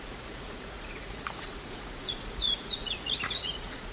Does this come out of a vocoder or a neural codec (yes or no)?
yes